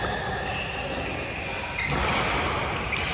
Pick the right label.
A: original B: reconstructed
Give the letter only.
A